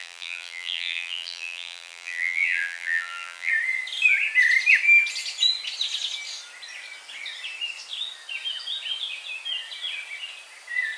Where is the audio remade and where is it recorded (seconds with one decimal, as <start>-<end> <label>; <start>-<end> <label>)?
0.0-3.5 remade; 3.5-11.0 recorded

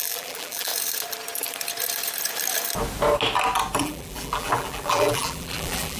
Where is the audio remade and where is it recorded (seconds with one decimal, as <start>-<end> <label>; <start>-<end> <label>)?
0.0-0.7 remade; 0.7-3.8 recorded; 3.8-6.0 remade

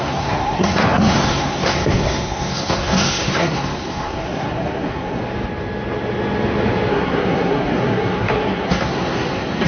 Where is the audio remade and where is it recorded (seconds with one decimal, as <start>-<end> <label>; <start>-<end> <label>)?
0.0-5.2 remade; 5.2-6.9 recorded; 6.9-9.7 remade